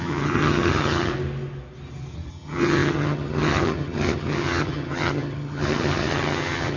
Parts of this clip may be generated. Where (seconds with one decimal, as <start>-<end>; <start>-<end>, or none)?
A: 0.0-1.1; 2.3-6.8